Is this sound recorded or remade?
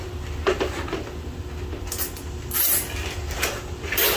recorded